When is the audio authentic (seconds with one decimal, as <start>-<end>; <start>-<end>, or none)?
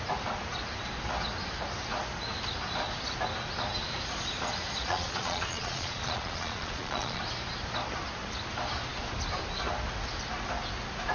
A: 0.0-4.8; 7.2-11.1